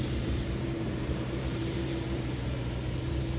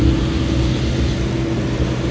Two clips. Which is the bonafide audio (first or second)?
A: second